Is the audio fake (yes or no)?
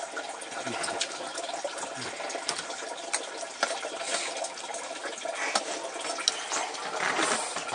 no